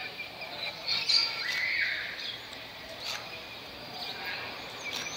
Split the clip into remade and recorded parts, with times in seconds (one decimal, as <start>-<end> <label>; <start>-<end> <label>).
0.0-0.5 remade; 0.5-1.2 recorded; 1.2-1.7 remade; 1.7-5.2 recorded